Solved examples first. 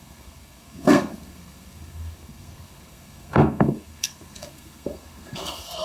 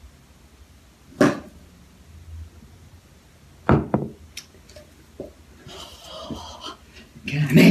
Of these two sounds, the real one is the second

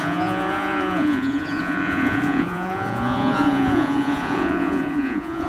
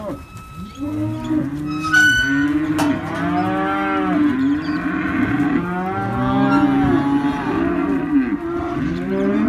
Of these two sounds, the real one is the second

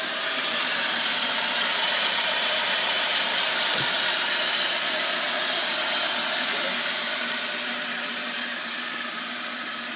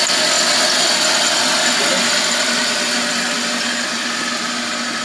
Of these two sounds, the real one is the second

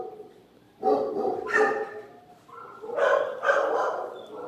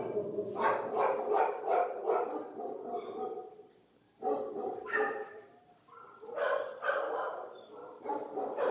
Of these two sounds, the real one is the first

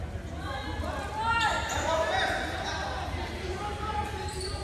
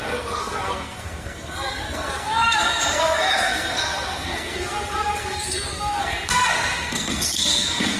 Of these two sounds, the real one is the first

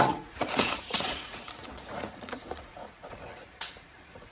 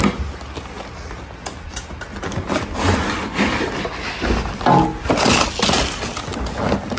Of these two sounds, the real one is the second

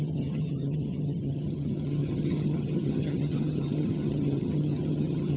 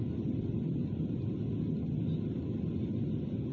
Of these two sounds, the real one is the second